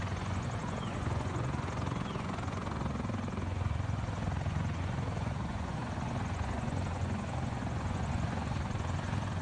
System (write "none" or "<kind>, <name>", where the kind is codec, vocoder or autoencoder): vocoder, Vocos